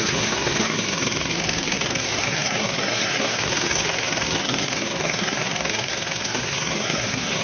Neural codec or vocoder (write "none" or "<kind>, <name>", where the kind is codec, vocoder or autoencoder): codec, SNAC